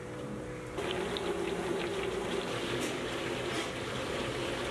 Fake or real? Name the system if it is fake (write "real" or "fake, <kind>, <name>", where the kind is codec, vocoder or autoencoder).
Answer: real